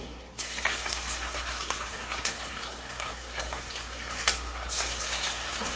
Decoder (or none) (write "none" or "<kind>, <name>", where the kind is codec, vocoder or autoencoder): codec, SNAC